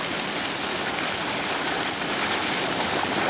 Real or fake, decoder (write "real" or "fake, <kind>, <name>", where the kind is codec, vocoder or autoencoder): real